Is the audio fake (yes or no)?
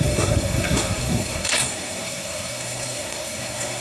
yes